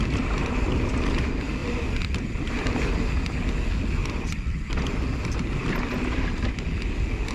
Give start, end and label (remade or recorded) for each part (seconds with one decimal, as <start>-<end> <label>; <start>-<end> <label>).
0.0-1.6 recorded; 1.6-3.1 remade; 3.1-4.0 recorded; 4.0-6.5 remade; 6.5-7.3 recorded